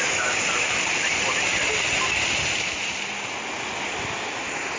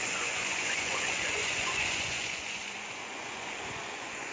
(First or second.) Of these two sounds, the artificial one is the second